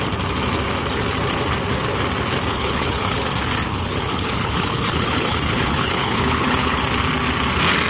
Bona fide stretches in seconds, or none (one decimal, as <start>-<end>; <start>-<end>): 0.0-2.5; 3.2-3.7; 6.8-7.9